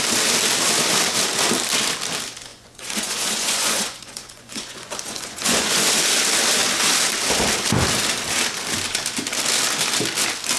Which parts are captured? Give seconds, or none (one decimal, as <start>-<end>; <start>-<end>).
0.0-2.5; 5.9-10.6